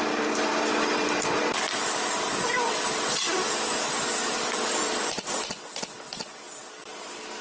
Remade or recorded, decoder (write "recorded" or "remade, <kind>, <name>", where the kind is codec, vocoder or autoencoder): recorded